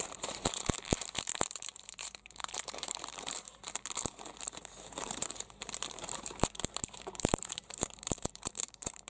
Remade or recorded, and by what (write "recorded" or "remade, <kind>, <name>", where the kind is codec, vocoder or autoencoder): remade, vocoder, BigVGAN v2